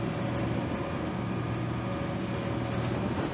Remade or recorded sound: recorded